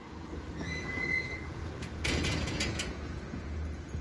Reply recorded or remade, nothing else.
remade